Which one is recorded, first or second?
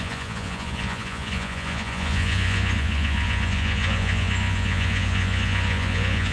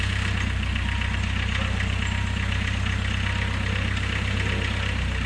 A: second